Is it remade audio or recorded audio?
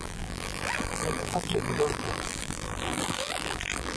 remade